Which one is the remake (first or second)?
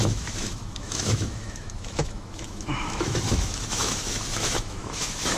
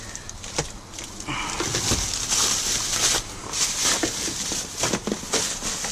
first